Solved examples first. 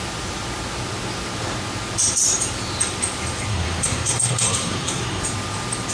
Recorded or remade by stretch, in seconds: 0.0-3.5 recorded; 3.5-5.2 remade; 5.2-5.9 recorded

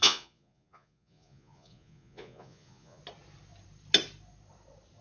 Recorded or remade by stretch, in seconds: 0.0-3.0 remade; 3.0-5.0 recorded

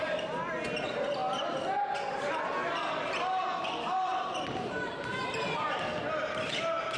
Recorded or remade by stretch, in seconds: 0.0-7.0 recorded

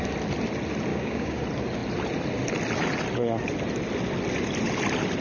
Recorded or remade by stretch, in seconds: 0.0-0.9 recorded; 0.9-1.4 remade; 1.4-5.2 recorded